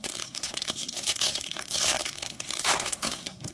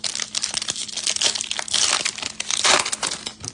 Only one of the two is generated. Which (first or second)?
first